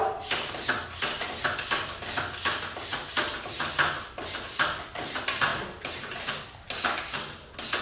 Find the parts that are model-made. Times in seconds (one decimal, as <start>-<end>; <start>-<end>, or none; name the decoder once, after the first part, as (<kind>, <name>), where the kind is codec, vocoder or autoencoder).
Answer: none